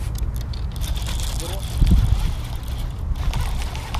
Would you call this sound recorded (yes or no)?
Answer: yes